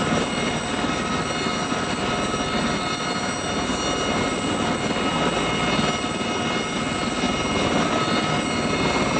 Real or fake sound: real